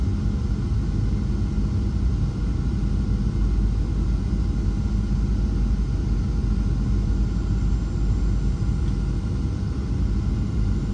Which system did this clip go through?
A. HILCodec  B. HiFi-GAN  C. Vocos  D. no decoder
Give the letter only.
D